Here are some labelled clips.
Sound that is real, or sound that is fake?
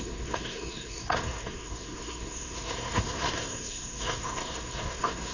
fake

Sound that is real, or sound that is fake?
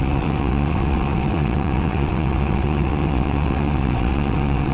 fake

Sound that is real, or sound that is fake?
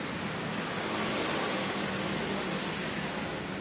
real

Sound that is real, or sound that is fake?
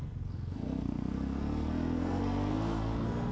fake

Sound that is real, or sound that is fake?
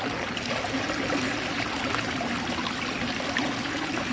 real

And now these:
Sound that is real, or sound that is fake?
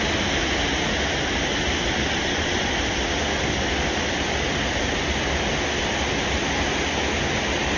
real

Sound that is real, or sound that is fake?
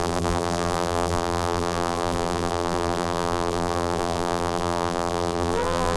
fake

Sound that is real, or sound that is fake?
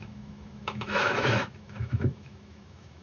fake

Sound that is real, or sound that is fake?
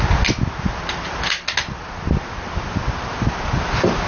real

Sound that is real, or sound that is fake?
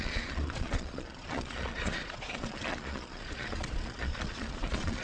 fake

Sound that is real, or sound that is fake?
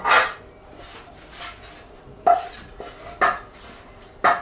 real